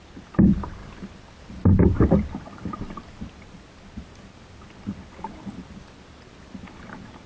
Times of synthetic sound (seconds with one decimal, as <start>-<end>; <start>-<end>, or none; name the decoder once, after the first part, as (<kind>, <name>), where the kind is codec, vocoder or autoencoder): none